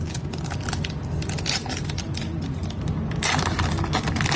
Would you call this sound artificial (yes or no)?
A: no